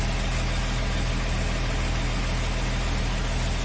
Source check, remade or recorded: recorded